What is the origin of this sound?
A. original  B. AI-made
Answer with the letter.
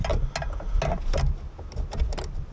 A